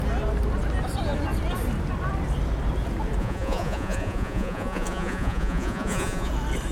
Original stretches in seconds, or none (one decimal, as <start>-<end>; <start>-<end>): 0.0-3.2; 6.3-6.7